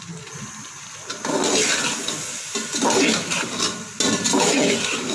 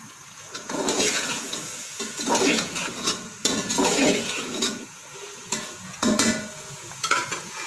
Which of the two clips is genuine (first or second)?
first